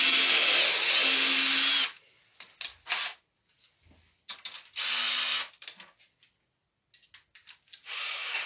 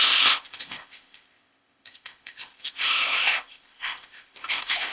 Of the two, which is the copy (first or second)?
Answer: second